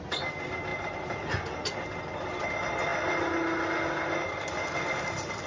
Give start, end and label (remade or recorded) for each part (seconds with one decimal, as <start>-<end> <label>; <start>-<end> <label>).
0.0-0.7 recorded; 0.7-1.4 remade; 1.4-5.5 recorded